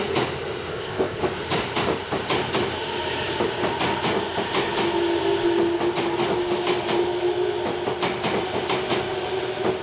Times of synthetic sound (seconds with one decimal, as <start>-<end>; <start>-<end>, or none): 0.7-1.2